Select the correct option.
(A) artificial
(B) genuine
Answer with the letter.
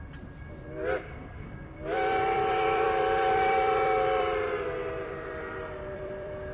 A